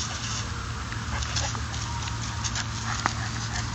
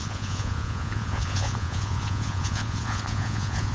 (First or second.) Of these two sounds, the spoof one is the second